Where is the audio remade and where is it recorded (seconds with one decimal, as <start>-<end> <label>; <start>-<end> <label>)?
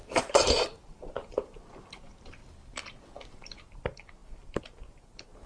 0.0-2.4 remade; 2.4-3.3 recorded; 3.3-5.5 remade